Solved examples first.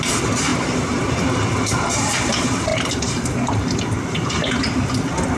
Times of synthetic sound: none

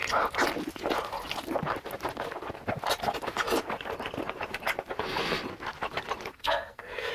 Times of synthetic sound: 6.3-7.1 (codec, SNAC)

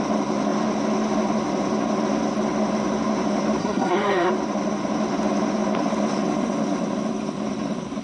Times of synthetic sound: 3.6-4.3 (codec, SNAC)

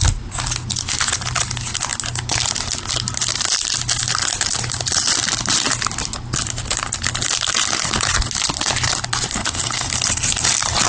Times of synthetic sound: 9.4-9.9 (codec, SNAC)

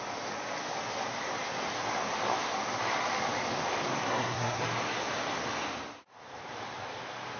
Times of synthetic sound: 4.0-4.6 (codec, SNAC)